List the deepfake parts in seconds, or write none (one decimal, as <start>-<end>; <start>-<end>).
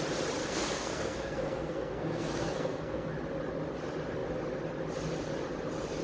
0.4-3.1